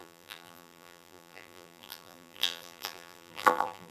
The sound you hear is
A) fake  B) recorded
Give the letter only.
A